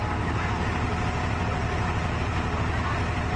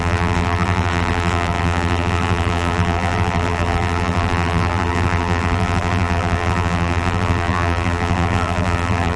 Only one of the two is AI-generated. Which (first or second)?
second